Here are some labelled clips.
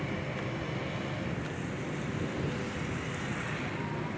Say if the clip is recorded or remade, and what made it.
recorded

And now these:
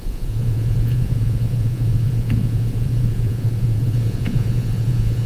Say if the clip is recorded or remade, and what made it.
remade, vocoder, Vocos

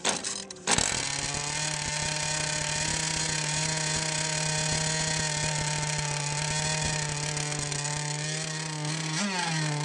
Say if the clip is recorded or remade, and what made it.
recorded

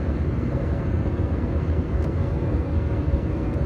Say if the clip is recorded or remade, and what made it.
remade, codec, SNAC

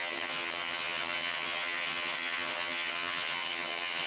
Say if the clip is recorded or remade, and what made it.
remade, vocoder, HiFi-GAN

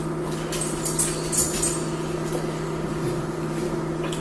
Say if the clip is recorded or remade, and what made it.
recorded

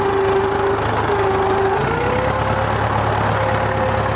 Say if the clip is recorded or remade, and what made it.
recorded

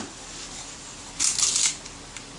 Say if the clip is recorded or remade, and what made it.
recorded